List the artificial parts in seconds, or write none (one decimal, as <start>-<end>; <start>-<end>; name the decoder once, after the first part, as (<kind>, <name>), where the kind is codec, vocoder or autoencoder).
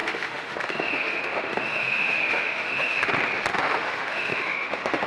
0.0-3.1 (autoencoder, DAC-VAE); 3.5-5.1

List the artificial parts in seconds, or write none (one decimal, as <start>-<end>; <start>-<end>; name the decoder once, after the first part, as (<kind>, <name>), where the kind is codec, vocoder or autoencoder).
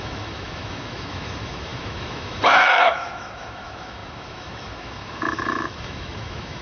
0.0-6.6 (autoencoder, DAC-VAE)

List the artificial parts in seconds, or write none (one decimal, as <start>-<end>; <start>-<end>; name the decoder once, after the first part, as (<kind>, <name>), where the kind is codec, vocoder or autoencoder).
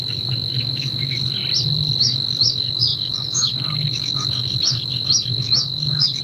0.0-1.4 (autoencoder, DAC-VAE); 2.0-6.2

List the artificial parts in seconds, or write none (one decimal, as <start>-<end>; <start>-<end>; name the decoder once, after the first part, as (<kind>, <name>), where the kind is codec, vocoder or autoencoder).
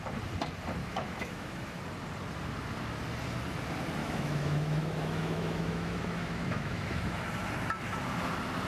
0.8-1.8 (autoencoder, DAC-VAE); 4.0-7.2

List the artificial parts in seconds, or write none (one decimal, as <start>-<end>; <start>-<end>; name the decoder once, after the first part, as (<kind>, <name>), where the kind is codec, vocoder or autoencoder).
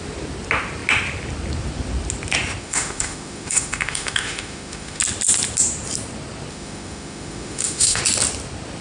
2.6-5.0 (autoencoder, DAC-VAE); 6.5-8.0